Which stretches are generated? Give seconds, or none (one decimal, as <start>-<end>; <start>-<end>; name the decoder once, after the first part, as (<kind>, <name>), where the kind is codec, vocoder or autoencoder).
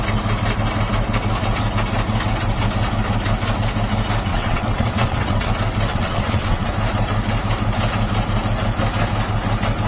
4.3-5.5 (vocoder, WaveNeXt); 5.9-6.7